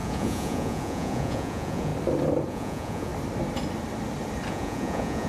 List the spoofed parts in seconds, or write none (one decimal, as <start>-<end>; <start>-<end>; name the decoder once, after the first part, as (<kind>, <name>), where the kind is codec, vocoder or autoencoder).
0.0-1.9 (vocoder, Vocos); 2.5-3.1; 4.5-5.3